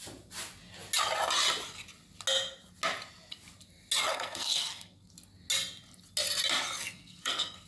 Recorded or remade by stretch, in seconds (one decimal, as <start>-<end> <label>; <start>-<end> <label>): 0.0-4.1 recorded; 4.1-5.1 remade; 5.1-6.8 recorded; 6.8-7.7 remade